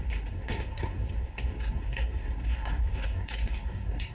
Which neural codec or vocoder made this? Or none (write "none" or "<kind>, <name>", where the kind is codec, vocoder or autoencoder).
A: codec, SNAC